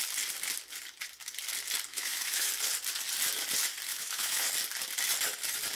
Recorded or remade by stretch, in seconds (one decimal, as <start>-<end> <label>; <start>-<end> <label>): 0.0-1.9 recorded; 1.9-2.5 remade; 2.5-3.9 recorded; 3.9-4.5 remade; 4.5-5.8 recorded